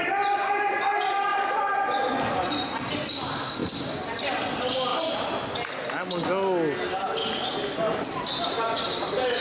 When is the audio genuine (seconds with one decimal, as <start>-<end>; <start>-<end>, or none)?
0.0-1.3; 2.6-3.6; 4.4-9.4